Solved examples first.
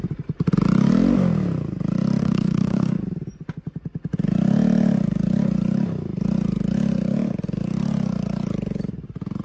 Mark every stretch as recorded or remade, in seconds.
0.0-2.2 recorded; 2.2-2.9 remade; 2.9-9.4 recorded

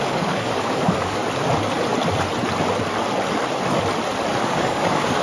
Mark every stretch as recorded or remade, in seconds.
0.0-1.2 remade; 1.2-4.3 recorded; 4.3-5.2 remade